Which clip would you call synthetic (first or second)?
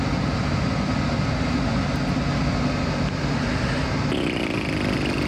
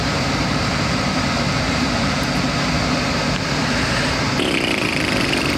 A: second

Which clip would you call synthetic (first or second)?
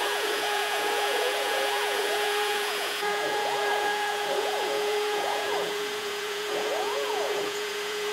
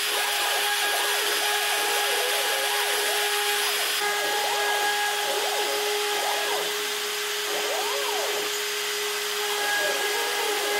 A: first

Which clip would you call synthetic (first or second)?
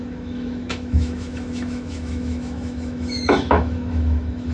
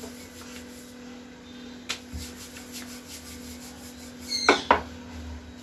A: first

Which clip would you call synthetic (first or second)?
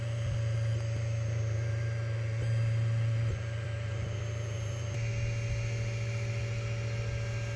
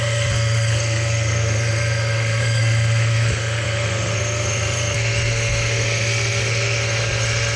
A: second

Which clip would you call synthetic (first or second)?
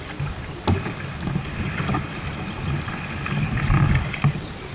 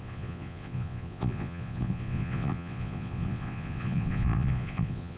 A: second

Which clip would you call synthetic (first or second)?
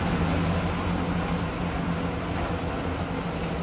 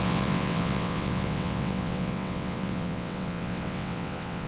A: second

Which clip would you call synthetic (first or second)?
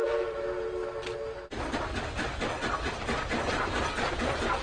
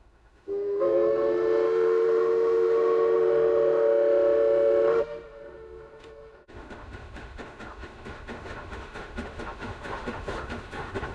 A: second